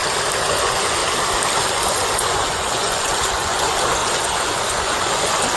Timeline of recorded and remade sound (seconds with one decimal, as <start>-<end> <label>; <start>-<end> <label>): 0.0-0.5 recorded; 0.5-1.0 remade; 1.0-1.6 recorded; 1.6-5.6 remade